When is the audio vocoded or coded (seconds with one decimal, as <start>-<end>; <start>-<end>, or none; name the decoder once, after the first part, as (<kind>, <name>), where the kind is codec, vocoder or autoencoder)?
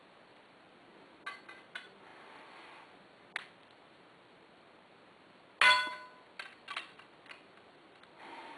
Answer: none